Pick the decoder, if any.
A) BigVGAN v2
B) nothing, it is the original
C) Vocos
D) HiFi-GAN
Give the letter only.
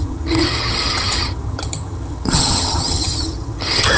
D